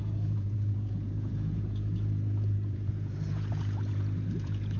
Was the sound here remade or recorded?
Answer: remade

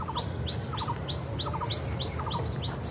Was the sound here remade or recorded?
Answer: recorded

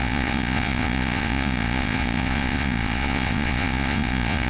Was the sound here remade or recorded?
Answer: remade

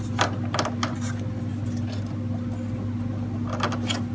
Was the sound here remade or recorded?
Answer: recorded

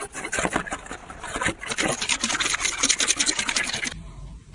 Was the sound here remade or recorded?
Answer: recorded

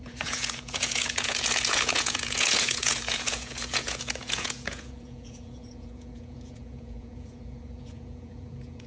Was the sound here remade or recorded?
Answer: remade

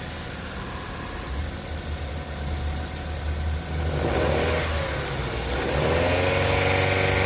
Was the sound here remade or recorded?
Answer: recorded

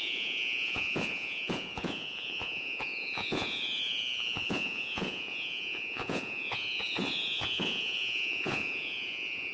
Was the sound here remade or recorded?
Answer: remade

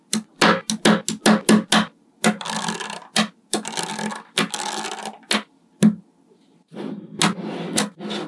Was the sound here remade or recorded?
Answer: recorded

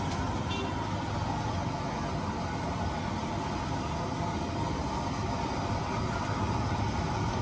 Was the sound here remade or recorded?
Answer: recorded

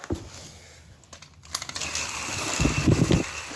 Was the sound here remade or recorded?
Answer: recorded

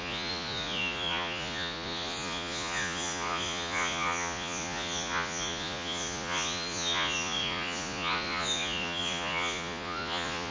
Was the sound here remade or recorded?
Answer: remade